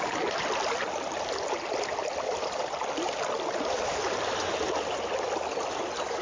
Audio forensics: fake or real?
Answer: real